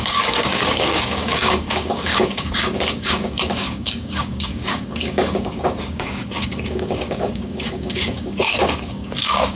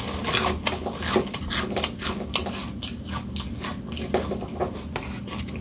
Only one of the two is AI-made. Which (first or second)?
first